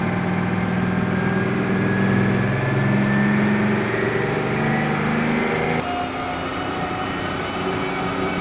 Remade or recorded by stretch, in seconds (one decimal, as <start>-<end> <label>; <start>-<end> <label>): 0.0-6.5 recorded; 6.5-7.4 remade; 7.4-8.4 recorded